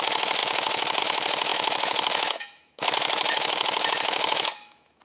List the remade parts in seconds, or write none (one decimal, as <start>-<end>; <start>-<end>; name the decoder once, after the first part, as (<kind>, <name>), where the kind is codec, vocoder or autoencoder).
0.0-5.0 (autoencoder, DAC-VAE)